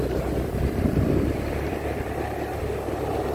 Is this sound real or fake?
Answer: fake